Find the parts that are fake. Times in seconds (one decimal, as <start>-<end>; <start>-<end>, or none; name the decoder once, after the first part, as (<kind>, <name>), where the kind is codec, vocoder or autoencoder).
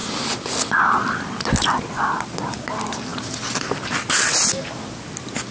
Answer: none